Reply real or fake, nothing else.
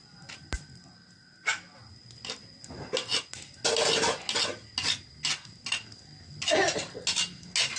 real